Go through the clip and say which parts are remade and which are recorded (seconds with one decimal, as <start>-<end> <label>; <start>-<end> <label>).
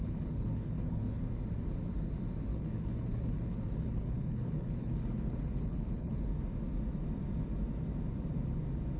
0.0-1.2 remade; 1.2-2.5 recorded; 2.5-6.3 remade; 6.3-9.0 recorded